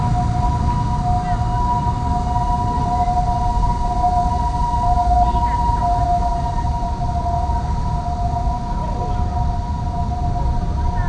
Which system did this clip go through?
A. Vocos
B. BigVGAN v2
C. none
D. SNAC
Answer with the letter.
C